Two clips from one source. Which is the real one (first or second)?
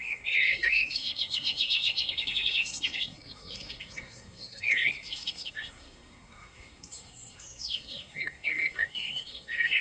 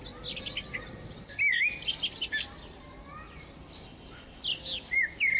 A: second